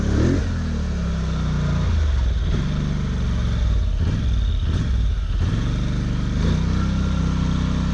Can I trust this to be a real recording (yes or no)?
yes